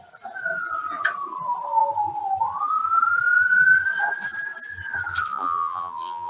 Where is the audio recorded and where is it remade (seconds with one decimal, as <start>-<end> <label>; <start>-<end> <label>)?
0.0-5.3 recorded; 5.3-6.3 remade